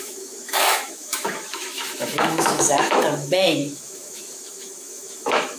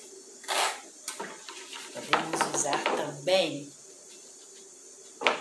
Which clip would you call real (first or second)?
second